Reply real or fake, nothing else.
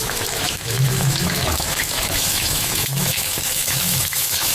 fake